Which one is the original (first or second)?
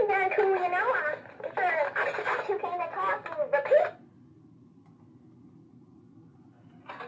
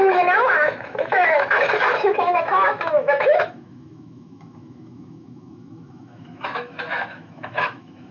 first